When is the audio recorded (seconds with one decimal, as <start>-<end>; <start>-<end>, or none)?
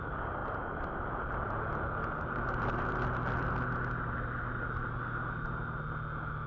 0.0-6.5